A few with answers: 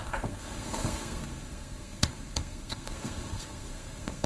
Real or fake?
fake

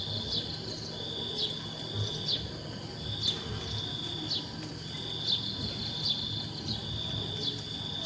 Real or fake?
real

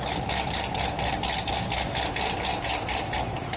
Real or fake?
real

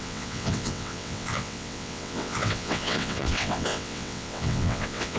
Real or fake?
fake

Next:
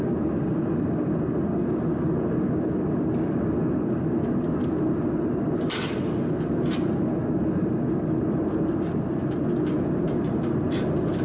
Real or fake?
real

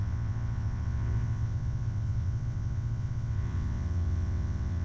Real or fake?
fake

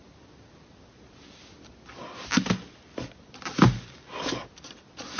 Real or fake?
real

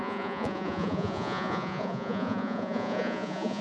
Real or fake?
fake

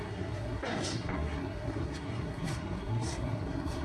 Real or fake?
fake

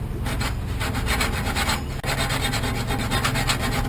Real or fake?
real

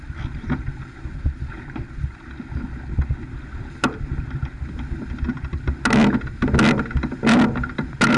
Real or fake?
real